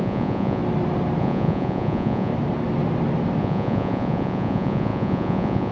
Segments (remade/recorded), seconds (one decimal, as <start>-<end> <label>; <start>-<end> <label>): 0.0-0.6 remade; 0.6-1.2 recorded; 1.2-2.3 remade; 2.3-3.4 recorded; 3.4-5.7 remade

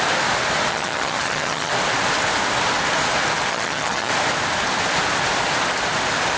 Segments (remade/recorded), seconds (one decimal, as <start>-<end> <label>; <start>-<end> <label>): 0.0-0.7 recorded; 0.7-1.7 remade; 1.7-3.5 recorded; 3.5-4.1 remade; 4.1-6.4 recorded

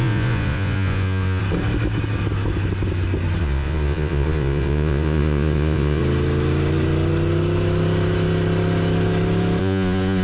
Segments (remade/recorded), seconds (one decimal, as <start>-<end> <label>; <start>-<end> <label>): 0.0-1.4 remade; 1.4-3.4 recorded; 3.4-6.0 remade; 6.0-9.6 recorded; 9.6-10.2 remade

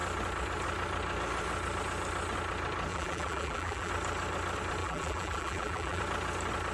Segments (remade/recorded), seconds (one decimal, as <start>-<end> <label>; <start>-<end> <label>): 0.0-2.9 recorded; 2.9-3.9 remade; 3.9-4.8 recorded; 4.8-6.0 remade; 6.0-6.7 recorded

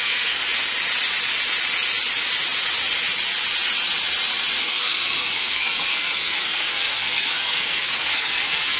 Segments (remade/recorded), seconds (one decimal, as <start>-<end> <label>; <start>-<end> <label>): 0.0-0.4 remade; 0.4-4.6 recorded; 4.6-8.8 remade

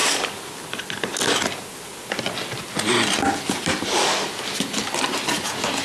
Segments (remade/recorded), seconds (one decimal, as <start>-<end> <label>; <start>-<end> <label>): 0.0-5.8 recorded